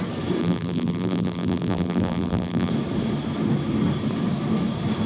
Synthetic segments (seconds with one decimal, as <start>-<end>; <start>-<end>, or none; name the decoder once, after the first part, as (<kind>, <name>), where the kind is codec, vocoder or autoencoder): 0.4-2.7 (vocoder, BigVGAN v2)